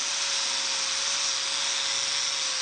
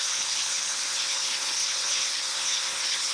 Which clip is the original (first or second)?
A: first